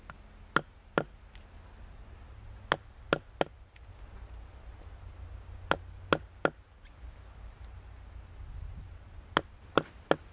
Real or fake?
real